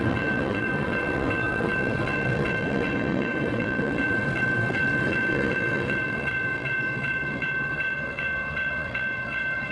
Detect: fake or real fake